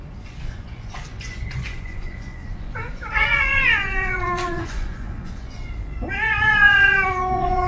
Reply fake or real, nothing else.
fake